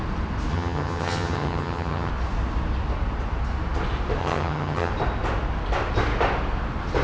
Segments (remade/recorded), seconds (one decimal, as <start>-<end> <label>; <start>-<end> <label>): 0.0-0.5 recorded; 0.5-2.1 remade; 2.1-4.2 recorded; 4.2-4.9 remade; 4.9-7.0 recorded

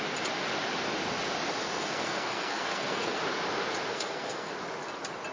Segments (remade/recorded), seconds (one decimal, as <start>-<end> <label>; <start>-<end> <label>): 0.0-1.6 recorded; 1.6-3.2 remade; 3.2-3.9 recorded; 3.9-4.5 remade; 4.5-5.3 recorded

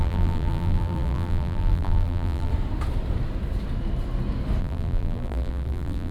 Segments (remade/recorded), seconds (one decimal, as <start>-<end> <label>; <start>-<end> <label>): 0.0-2.5 remade; 2.5-4.6 recorded; 4.6-6.1 remade